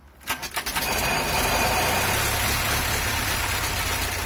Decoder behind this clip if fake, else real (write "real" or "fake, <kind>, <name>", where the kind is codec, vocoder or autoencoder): real